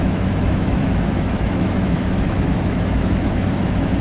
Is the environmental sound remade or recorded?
remade